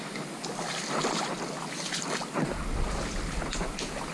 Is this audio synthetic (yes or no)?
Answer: no